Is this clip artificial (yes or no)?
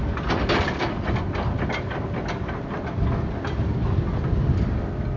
no